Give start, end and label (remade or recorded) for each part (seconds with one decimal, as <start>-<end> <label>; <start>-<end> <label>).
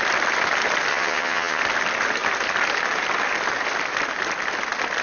0.0-0.9 recorded; 0.9-1.6 remade; 1.6-5.0 recorded